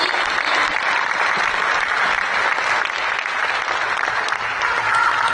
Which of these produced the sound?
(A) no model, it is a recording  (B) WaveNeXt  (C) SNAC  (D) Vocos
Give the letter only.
A